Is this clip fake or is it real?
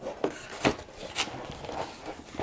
real